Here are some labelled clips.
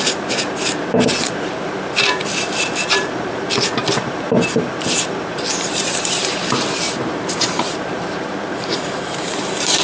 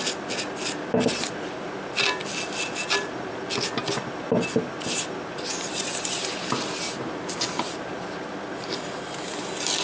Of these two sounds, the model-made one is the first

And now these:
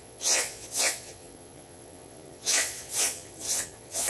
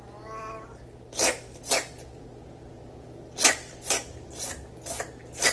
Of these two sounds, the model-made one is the first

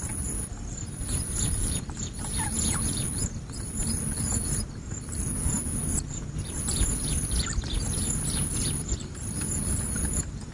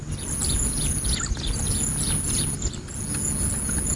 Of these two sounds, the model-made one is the first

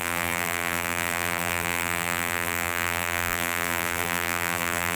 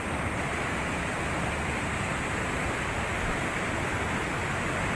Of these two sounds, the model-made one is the first